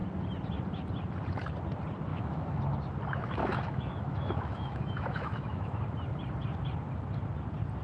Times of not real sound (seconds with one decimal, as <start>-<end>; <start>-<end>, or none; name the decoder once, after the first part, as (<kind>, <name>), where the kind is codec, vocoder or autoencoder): 2.1-2.6 (autoencoder, DAC-VAE); 3.4-5.8